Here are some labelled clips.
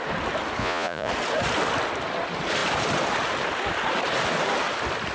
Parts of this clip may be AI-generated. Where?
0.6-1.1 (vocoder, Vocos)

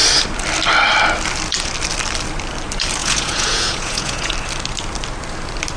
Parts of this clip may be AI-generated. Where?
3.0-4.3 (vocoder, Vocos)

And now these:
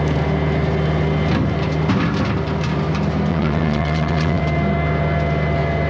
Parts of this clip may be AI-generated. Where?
3.3-4.4 (vocoder, WaveNeXt)